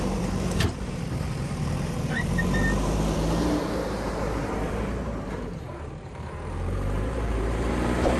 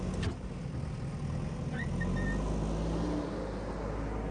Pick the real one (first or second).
second